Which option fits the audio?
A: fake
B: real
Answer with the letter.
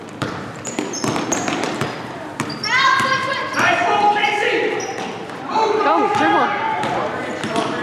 A